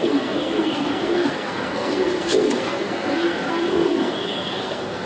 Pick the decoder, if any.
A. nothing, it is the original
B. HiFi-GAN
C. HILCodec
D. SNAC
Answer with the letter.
D